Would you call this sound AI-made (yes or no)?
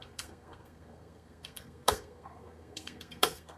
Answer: yes